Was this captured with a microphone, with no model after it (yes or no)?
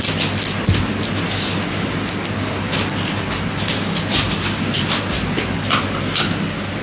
yes